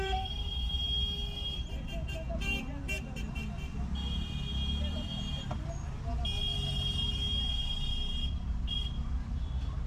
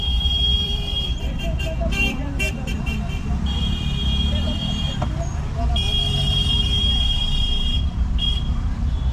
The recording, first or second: first